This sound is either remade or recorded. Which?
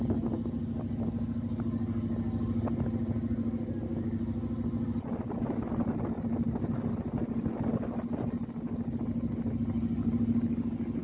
recorded